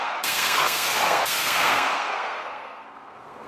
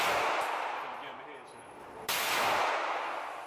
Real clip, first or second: second